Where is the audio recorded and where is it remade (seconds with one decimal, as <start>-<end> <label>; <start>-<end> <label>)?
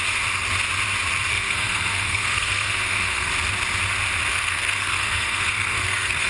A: 0.0-1.3 recorded; 1.3-3.3 remade; 3.3-4.3 recorded; 4.3-6.3 remade